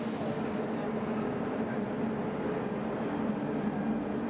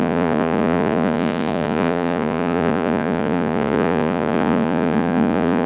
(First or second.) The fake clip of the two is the second